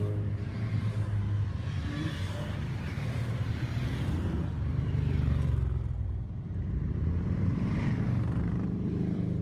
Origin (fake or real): fake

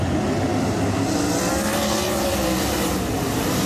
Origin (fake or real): real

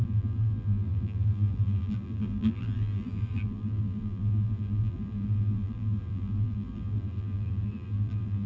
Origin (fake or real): fake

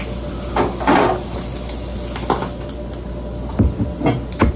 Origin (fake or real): real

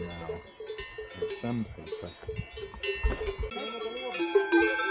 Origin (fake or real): real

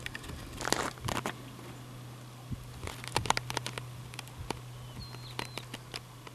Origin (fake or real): real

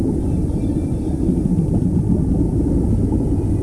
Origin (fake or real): real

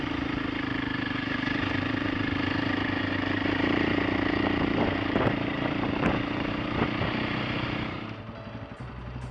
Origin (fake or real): fake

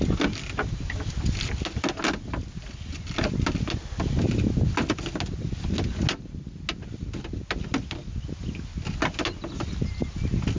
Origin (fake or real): real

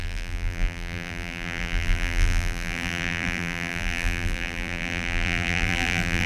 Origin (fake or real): fake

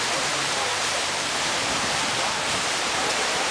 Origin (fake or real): fake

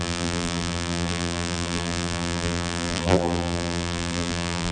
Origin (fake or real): fake